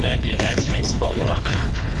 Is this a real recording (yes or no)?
no